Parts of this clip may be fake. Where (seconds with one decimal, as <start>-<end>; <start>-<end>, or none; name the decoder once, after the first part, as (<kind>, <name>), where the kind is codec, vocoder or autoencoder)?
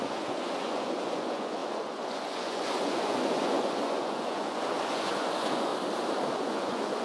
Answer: 0.0-5.7 (vocoder, Vocos); 6.4-7.0